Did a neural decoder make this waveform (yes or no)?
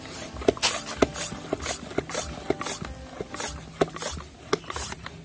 no